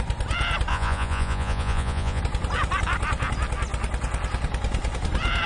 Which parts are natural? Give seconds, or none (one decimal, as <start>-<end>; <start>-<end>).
0.0-0.7; 2.2-5.5